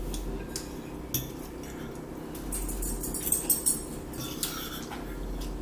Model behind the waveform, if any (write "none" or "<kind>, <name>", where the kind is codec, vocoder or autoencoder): none